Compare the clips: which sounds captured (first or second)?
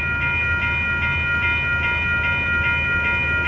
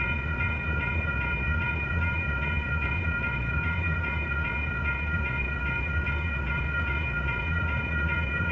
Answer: first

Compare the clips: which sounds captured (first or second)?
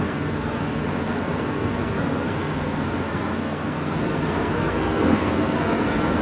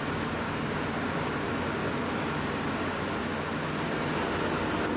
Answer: second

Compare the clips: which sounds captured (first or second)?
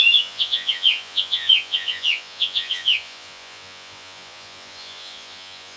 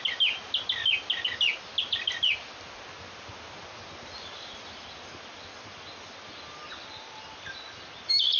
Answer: second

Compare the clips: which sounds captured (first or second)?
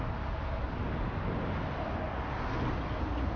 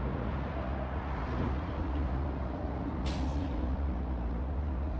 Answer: first